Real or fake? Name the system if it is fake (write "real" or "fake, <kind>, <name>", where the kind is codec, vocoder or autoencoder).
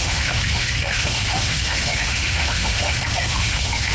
fake, autoencoder, DAC-VAE